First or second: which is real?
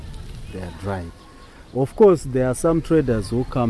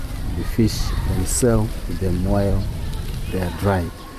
first